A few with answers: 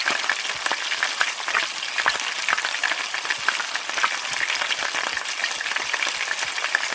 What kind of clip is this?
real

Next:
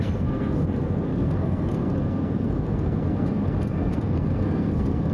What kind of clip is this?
fake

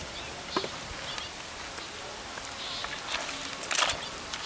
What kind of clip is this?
real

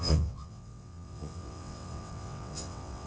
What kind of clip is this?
fake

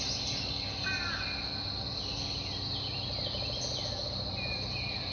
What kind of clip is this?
real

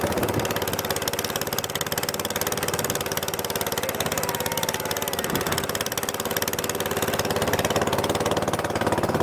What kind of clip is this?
real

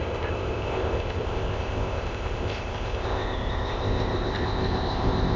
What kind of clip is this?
fake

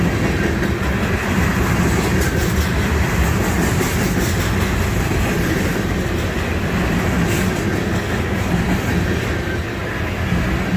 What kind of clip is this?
real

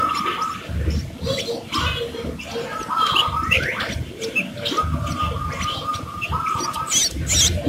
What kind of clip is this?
real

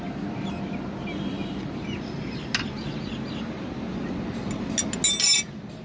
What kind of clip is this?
real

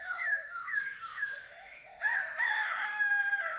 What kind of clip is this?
fake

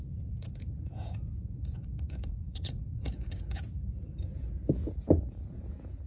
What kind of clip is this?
fake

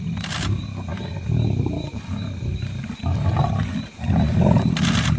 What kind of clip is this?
real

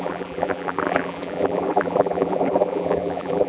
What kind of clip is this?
fake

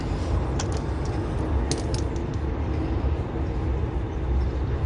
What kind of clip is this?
real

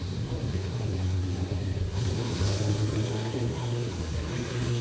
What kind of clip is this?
fake